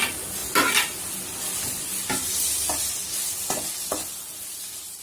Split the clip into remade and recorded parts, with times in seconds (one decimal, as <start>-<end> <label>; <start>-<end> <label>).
0.0-5.0 recorded